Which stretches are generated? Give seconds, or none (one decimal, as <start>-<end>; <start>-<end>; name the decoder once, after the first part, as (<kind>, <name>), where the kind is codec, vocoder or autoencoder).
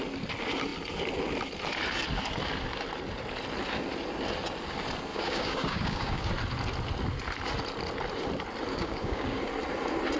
5.1-6.3 (codec, DAC); 8.7-9.4